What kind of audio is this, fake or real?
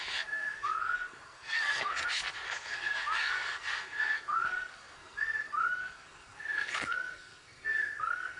fake